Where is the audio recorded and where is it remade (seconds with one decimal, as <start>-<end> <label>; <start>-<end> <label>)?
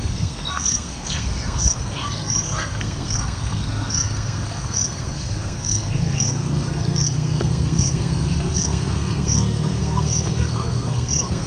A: 0.0-11.5 remade